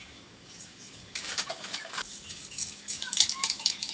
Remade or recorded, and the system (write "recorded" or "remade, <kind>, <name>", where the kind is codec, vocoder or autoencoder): remade, codec, DAC